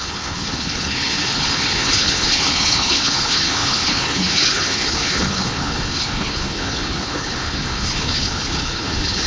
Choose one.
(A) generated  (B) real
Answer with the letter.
A